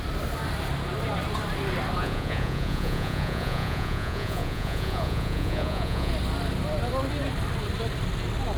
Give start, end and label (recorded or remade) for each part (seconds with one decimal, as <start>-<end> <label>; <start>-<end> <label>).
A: 0.0-2.0 recorded; 2.0-6.1 remade; 6.1-8.6 recorded